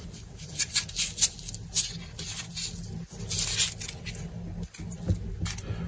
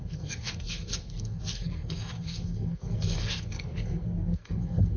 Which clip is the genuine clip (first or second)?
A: first